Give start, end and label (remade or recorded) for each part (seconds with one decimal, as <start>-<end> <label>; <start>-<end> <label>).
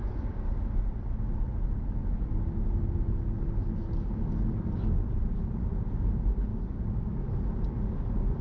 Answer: 0.0-0.6 remade; 0.6-6.5 recorded; 6.5-7.3 remade; 7.3-8.4 recorded